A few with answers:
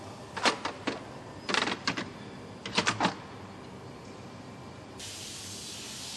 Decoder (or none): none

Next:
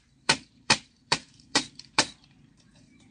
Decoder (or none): vocoder, BigVGAN v2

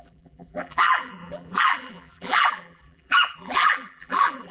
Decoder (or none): vocoder, BigVGAN v2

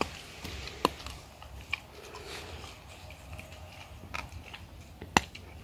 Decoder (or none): none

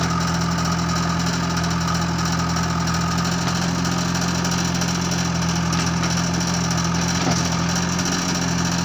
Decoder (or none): none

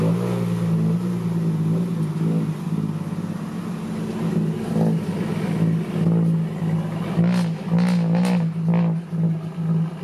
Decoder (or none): none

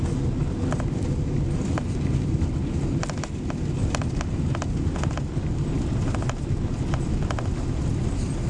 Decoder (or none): none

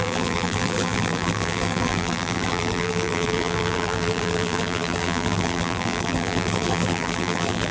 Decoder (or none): vocoder, BigVGAN v2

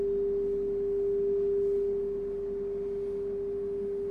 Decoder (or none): none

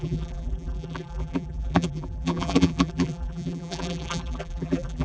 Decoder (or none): vocoder, BigVGAN v2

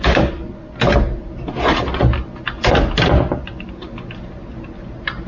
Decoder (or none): none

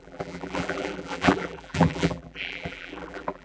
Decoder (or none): vocoder, BigVGAN v2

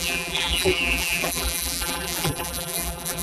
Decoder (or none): vocoder, BigVGAN v2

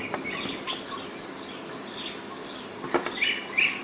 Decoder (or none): none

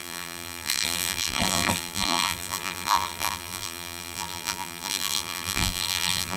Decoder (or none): vocoder, BigVGAN v2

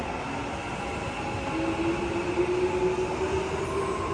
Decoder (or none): none